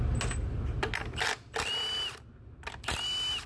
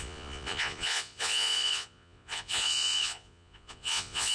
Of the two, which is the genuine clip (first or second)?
first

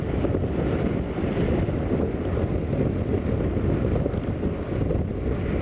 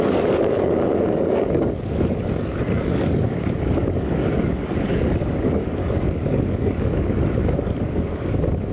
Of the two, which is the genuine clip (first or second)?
first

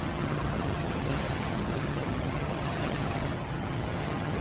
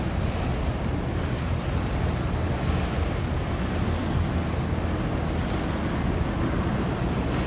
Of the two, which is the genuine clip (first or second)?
second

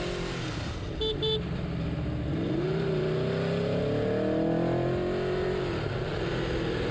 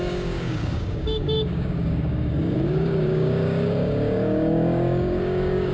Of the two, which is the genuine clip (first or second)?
first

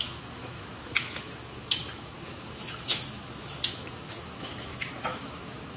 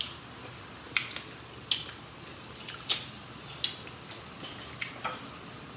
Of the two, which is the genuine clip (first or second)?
second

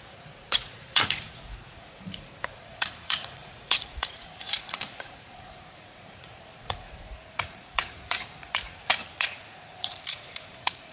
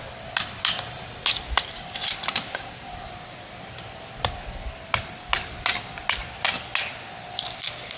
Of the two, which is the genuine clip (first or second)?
second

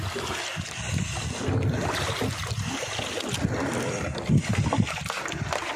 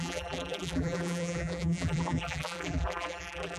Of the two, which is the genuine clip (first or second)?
first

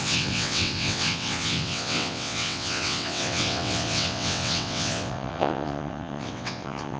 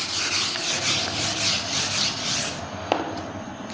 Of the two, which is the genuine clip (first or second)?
second